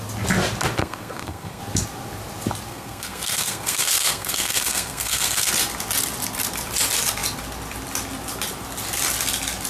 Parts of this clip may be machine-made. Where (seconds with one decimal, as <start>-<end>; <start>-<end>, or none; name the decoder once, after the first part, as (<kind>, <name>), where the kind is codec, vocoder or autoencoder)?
0.8-1.6 (codec, SNAC); 2.7-5.5